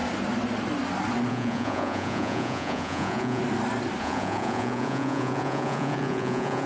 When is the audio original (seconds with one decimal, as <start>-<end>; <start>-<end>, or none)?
0.0-1.3; 3.4-4.0

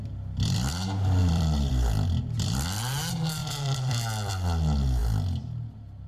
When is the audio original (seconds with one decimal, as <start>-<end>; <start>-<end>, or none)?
0.0-1.2; 2.1-3.4; 4.3-6.1

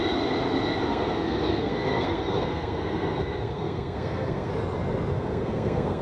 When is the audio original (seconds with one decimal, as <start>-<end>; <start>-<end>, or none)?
0.0-0.9; 4.5-5.1

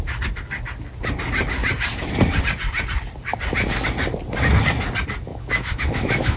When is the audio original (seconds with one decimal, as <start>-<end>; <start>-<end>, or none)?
0.0-5.3

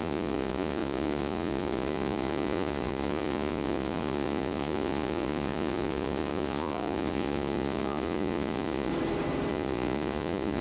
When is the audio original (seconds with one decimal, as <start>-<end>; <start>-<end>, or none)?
8.9-9.5

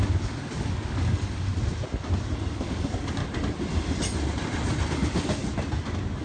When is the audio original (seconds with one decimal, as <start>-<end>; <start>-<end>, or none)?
1.5-2.5; 3.2-4.9; 5.4-6.2